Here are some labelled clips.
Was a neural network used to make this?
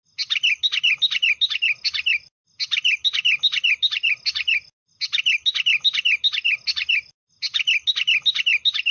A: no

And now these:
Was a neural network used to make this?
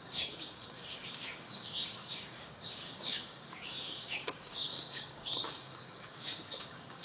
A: yes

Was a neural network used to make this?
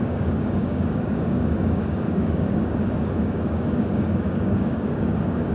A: yes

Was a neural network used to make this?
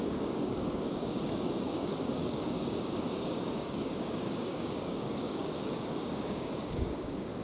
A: yes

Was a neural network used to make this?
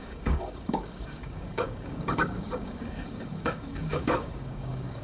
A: yes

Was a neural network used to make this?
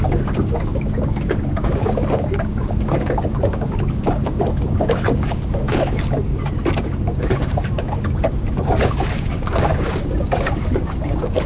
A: yes